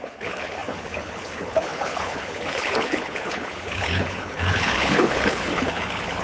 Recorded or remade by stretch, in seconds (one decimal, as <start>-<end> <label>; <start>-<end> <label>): 0.0-6.2 remade